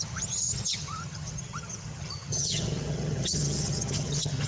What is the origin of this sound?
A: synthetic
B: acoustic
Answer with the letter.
A